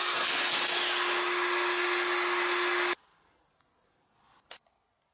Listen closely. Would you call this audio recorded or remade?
recorded